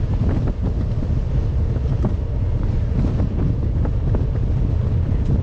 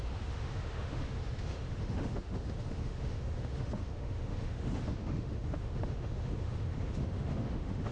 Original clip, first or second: first